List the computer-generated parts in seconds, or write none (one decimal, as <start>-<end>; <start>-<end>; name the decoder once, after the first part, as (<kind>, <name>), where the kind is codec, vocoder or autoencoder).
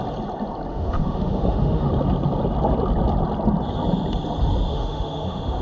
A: 0.7-1.9 (autoencoder, DAC-VAE); 4.7-5.6